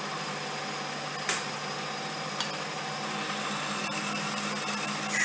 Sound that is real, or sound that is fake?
real